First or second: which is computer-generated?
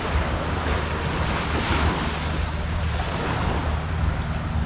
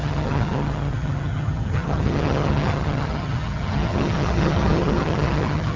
second